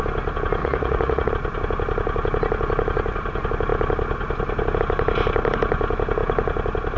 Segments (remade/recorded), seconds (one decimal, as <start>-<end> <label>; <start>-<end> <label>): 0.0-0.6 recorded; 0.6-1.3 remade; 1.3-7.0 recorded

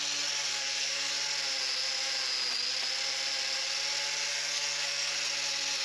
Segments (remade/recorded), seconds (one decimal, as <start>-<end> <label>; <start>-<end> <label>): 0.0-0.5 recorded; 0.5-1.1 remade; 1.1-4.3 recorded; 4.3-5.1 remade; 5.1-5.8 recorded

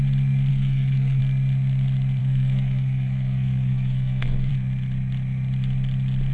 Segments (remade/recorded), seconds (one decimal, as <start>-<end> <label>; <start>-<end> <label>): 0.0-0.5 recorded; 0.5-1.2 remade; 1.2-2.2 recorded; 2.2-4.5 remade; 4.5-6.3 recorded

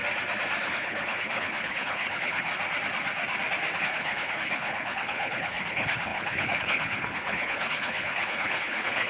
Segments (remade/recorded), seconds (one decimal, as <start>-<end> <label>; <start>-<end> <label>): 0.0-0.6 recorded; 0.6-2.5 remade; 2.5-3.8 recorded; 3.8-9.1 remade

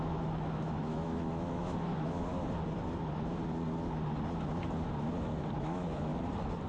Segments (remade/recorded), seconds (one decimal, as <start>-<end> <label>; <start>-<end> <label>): 0.0-2.3 remade; 2.3-5.6 recorded; 5.6-6.1 remade; 6.1-6.7 recorded

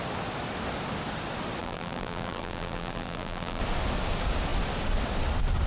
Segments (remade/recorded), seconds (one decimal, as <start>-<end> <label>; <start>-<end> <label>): 0.0-1.6 recorded; 1.6-3.6 remade; 3.6-5.7 recorded